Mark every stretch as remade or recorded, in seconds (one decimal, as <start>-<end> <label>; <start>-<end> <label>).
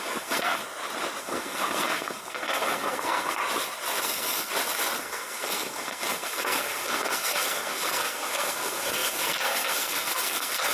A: 0.0-0.6 remade; 0.6-1.2 recorded; 1.2-3.4 remade; 3.4-4.0 recorded; 4.0-4.5 remade; 4.5-5.0 recorded; 5.0-10.7 remade